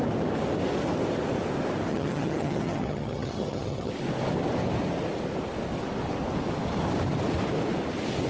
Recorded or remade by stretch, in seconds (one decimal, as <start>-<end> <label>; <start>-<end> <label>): 0.0-1.9 recorded; 1.9-3.9 remade; 3.9-8.3 recorded